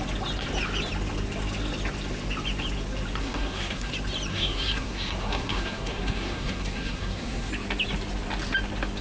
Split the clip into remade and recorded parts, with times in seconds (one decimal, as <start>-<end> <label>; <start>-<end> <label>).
0.0-3.2 recorded; 3.2-3.9 remade; 3.9-4.3 recorded; 4.3-7.5 remade; 7.5-9.0 recorded